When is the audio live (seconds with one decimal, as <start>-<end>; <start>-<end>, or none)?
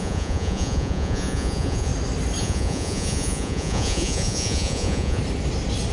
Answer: 1.9-2.4; 5.2-5.9